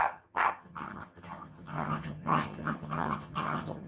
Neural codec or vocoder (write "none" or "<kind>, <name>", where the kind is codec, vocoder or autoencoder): vocoder, HiFi-GAN